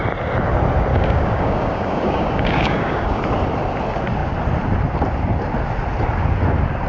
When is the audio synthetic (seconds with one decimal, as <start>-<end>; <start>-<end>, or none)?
0.9-3.2